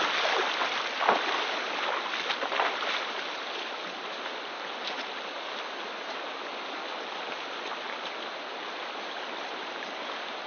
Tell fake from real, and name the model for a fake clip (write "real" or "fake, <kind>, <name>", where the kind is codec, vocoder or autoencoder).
real